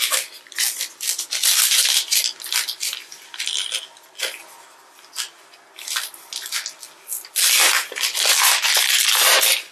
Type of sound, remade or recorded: recorded